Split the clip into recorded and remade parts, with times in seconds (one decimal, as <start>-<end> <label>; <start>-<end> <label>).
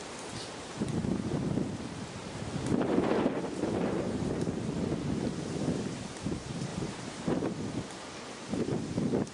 0.0-0.9 recorded; 0.9-1.7 remade; 1.7-2.2 recorded; 2.2-4.4 remade; 4.4-6.7 recorded; 6.7-7.3 remade; 7.3-9.3 recorded